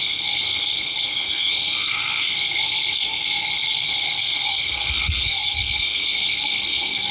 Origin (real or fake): fake